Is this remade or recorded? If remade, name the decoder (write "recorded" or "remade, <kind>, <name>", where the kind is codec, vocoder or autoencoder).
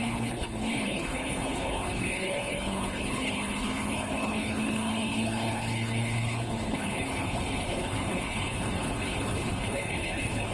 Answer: remade, codec, HILCodec